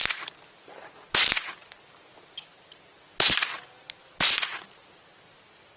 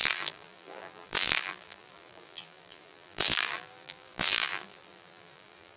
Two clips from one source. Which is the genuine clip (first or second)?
first